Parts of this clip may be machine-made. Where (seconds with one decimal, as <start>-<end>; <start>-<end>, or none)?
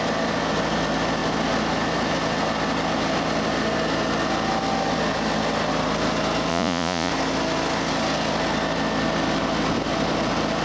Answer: 6.5-7.1